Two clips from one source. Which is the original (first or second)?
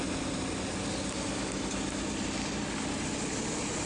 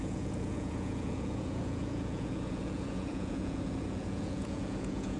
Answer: first